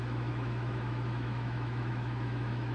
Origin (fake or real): fake